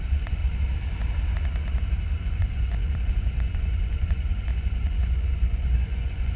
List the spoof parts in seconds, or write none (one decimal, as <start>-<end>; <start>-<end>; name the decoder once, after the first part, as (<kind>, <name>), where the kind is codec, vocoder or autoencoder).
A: 0.0-0.4 (vocoder, Vocos); 2.2-6.4